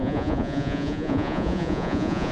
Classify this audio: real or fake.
fake